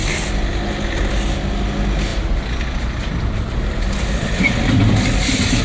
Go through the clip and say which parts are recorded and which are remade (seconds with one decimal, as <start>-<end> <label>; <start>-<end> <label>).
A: 0.0-5.6 recorded